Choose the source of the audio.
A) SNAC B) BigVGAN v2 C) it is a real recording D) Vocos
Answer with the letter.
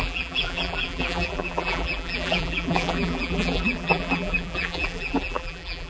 B